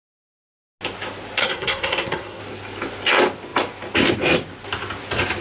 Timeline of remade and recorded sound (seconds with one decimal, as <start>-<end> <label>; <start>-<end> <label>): 0.0-1.4 recorded; 1.4-2.4 remade; 2.4-5.4 recorded